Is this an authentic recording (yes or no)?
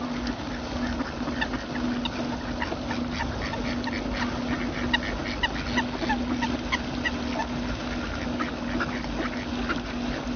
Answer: yes